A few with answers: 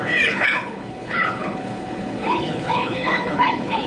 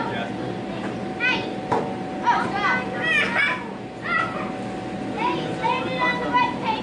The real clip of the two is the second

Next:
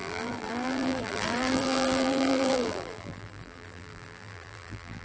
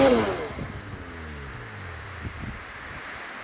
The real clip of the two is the second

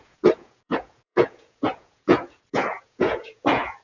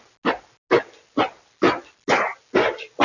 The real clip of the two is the second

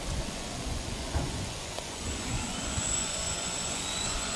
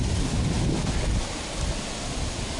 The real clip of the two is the second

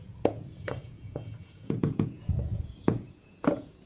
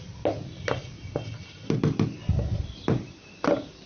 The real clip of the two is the second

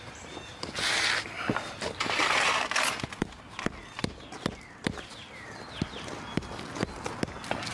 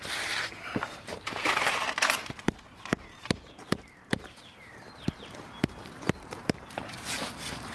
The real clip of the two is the first